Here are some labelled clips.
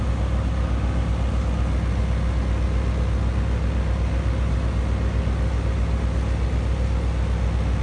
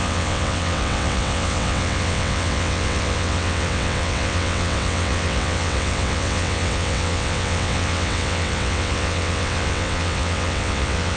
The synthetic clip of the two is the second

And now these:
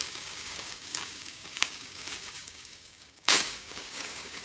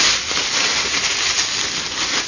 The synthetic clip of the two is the first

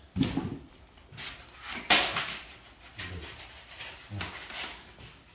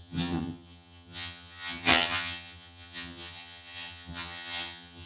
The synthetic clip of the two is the second